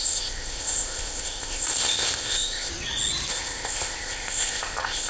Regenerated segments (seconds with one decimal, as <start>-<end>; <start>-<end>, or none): 0.0-2.7; 3.3-5.1

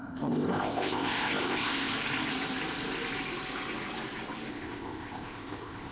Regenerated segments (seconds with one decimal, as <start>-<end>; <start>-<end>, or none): 0.0-1.9; 4.5-5.9

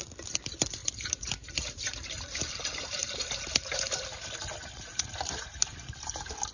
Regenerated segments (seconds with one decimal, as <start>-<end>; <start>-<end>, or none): none

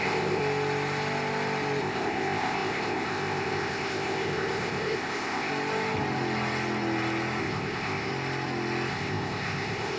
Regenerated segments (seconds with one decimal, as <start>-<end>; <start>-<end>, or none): 0.0-0.4; 1.8-5.5; 7.4-8.1; 8.9-10.0

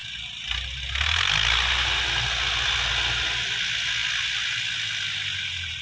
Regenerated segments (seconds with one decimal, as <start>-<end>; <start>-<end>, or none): none